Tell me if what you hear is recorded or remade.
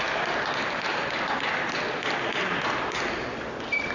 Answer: recorded